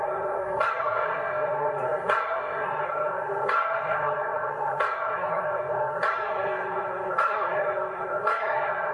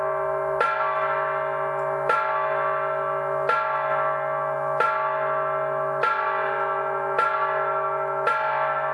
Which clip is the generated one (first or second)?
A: first